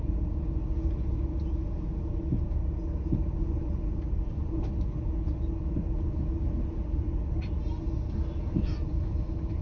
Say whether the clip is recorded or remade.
recorded